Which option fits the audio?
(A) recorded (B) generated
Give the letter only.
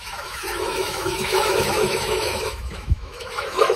B